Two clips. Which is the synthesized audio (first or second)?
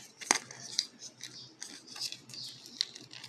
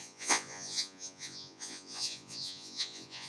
second